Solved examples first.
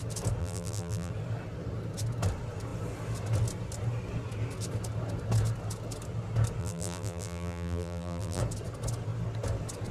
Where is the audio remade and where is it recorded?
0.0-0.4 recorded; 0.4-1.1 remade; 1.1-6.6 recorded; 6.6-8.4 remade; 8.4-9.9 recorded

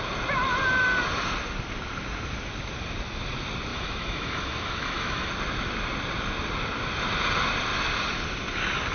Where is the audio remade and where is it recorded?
0.0-3.7 recorded; 3.7-5.3 remade; 5.3-8.9 recorded